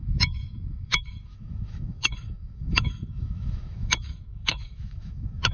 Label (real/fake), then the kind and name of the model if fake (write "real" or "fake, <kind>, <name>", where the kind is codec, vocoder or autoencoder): fake, autoencoder, DAC-VAE